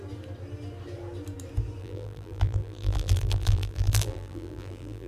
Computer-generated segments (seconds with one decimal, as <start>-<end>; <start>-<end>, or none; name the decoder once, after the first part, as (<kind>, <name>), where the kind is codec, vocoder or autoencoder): 1.8-5.1 (vocoder, BigVGAN v2)